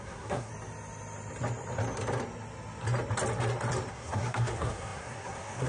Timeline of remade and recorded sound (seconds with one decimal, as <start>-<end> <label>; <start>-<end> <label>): 0.0-0.5 remade; 0.5-3.9 recorded; 3.9-5.7 remade